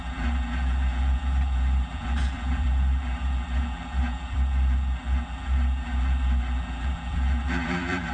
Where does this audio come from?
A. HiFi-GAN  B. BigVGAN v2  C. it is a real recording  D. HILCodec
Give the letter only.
B